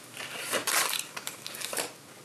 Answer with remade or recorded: remade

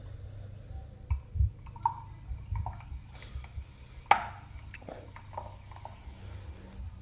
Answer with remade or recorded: recorded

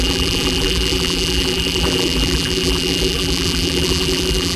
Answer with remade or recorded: remade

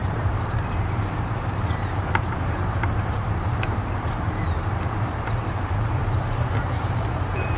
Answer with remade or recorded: remade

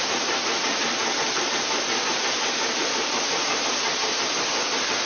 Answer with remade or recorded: remade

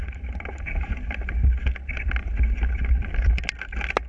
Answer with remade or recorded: recorded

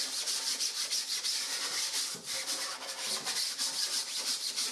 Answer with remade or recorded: remade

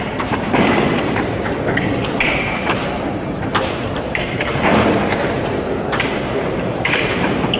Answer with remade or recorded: remade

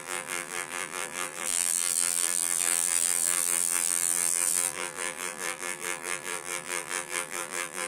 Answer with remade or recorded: remade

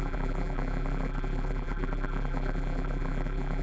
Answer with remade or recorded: remade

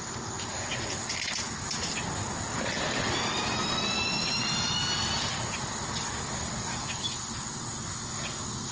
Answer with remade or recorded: recorded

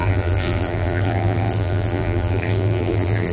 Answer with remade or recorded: remade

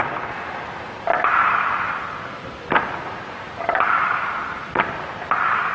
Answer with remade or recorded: recorded